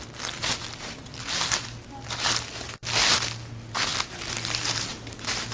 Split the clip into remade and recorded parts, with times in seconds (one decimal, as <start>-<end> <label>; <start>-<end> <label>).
0.0-5.5 recorded